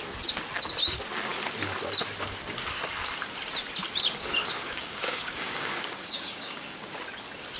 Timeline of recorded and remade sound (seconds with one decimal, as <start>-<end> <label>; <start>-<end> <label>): 0.0-4.4 recorded; 4.4-7.0 remade; 7.0-7.6 recorded